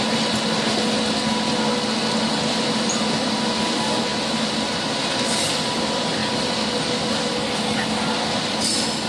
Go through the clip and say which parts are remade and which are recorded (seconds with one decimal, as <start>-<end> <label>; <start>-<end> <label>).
0.0-9.1 recorded